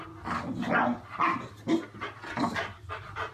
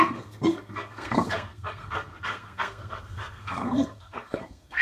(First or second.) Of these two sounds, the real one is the first